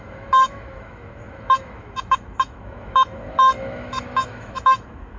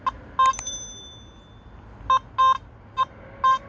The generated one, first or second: first